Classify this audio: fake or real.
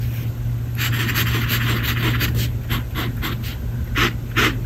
real